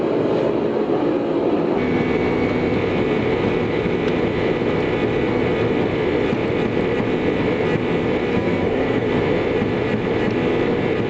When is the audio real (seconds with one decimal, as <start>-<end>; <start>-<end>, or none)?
0.0-8.3; 9.1-11.1